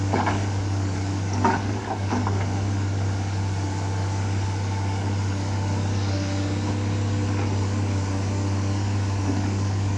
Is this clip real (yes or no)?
no